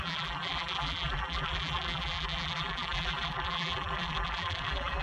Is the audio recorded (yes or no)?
no